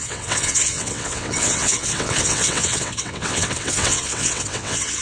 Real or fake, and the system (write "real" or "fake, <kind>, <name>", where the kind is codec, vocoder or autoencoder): fake, vocoder, WaveNeXt